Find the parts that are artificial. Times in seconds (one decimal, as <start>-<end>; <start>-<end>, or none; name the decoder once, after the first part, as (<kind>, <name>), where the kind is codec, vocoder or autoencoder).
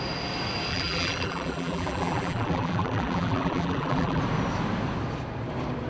0.7-4.2 (vocoder, BigVGAN v2)